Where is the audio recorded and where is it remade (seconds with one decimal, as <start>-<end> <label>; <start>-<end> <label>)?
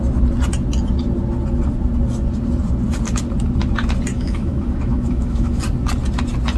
0.0-4.1 recorded; 4.1-5.6 remade; 5.6-6.6 recorded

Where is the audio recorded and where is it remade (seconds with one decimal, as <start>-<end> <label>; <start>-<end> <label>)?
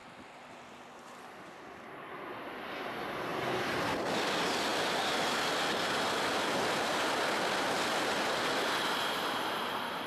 0.0-10.1 recorded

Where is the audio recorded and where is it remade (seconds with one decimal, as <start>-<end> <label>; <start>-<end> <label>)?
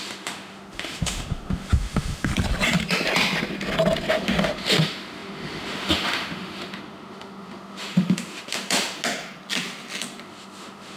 0.0-2.3 remade; 2.3-4.1 recorded; 4.1-9.0 remade; 9.0-10.2 recorded; 10.2-11.0 remade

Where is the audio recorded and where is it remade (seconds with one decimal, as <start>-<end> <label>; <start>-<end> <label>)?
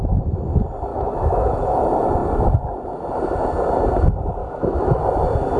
0.0-0.9 recorded; 0.9-1.8 remade; 1.8-4.4 recorded; 4.4-5.0 remade; 5.0-5.6 recorded